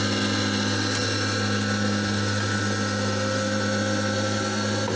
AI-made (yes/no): no